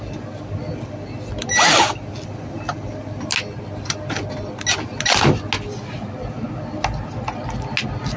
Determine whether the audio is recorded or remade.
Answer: recorded